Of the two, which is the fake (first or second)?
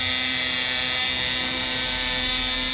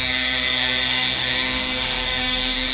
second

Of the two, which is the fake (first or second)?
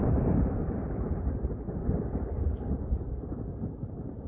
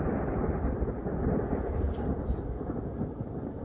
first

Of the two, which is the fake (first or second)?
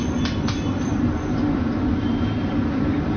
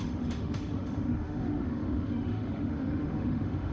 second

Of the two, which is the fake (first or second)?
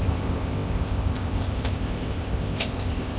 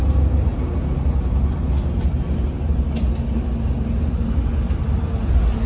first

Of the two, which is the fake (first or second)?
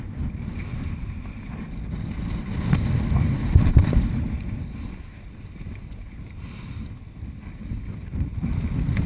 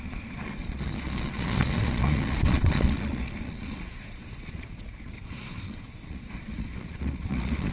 second